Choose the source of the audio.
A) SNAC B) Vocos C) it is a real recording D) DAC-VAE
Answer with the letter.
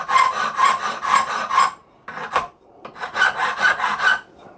C